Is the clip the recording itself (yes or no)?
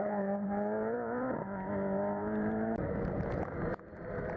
no